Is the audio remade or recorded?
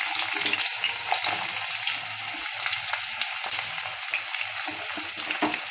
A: recorded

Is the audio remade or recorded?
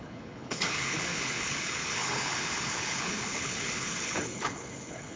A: remade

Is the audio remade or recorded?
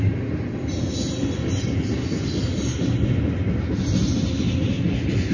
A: recorded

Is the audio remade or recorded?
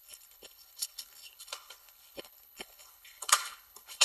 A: remade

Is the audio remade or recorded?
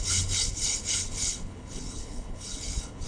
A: remade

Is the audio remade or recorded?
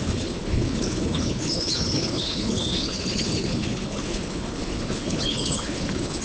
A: remade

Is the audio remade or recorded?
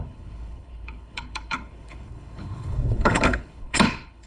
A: remade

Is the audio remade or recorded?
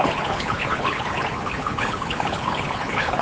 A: remade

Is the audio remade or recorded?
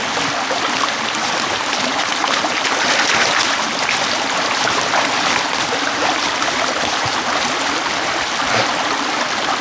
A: recorded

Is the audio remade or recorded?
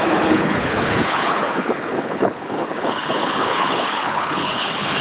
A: remade